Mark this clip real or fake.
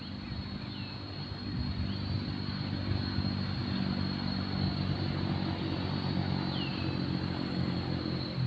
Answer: real